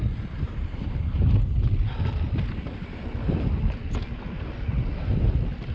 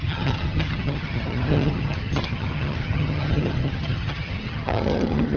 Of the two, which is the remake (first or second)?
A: second